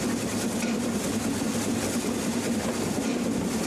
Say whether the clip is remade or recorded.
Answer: recorded